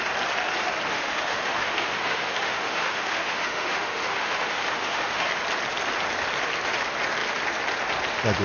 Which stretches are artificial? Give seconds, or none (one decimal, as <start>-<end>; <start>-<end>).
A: 0.9-5.3